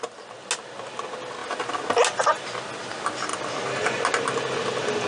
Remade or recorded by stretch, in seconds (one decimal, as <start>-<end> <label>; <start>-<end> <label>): 0.0-5.1 recorded